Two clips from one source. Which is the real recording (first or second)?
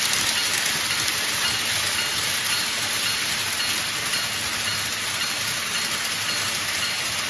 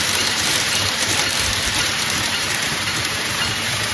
first